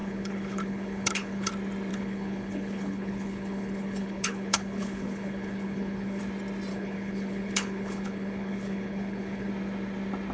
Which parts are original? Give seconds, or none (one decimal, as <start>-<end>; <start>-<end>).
1.5-1.9; 6.2-6.7; 9.5-10.3